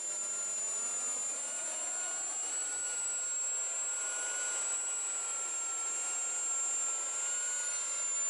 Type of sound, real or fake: real